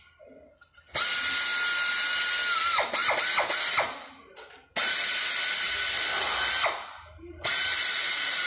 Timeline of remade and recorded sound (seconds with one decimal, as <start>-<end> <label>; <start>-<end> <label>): 0.0-4.7 recorded; 4.7-5.2 remade; 5.2-8.5 recorded